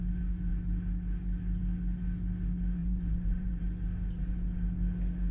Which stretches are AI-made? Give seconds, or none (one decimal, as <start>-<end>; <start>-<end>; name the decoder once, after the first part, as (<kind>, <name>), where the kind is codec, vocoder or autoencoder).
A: 2.8-3.6 (vocoder, BigVGAN v2)